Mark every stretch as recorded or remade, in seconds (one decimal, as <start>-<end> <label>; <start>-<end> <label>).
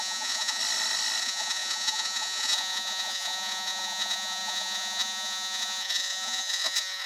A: 0.0-0.6 remade; 0.6-1.2 recorded; 1.2-7.1 remade